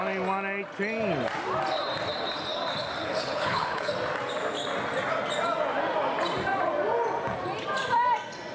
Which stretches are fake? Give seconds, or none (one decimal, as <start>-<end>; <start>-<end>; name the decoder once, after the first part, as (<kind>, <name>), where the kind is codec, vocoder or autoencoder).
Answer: 3.0-3.9 (codec, HILCodec)